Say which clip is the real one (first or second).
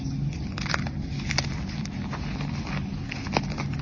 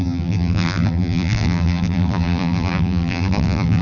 first